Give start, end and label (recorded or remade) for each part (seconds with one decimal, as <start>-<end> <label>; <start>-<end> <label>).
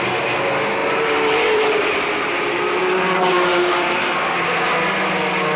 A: 0.0-0.8 recorded; 0.8-4.2 remade; 4.2-5.6 recorded